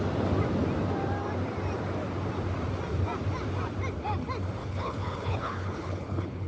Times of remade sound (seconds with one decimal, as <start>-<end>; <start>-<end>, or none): 4.6-6.5